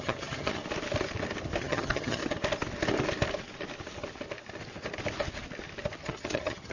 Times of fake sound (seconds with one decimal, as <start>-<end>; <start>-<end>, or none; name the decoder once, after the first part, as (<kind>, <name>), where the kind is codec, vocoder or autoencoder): 0.0-0.6 (vocoder, HiFi-GAN); 1.6-2.2; 6.0-6.7